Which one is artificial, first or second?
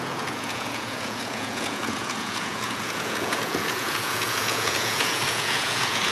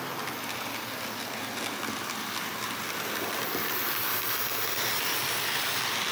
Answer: first